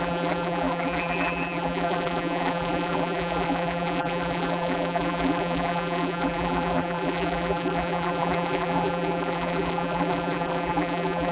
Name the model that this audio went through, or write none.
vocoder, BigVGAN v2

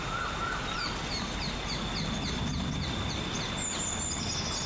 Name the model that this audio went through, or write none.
none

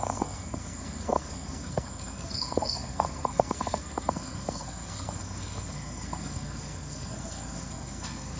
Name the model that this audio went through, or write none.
codec, SNAC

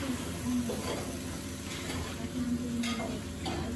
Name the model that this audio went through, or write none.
none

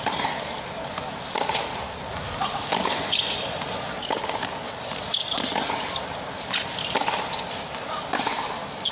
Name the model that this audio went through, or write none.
none